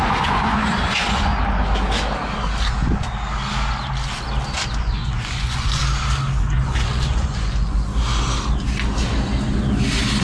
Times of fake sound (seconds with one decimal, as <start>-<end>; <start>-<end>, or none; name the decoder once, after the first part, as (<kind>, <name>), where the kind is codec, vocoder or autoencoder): 0.0-1.3 (vocoder, Vocos); 4.8-5.8; 6.4-7.9